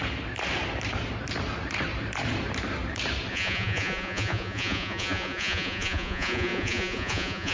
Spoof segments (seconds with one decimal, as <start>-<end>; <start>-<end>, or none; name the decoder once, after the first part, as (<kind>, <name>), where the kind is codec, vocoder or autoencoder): 3.3-7.5 (vocoder, Vocos)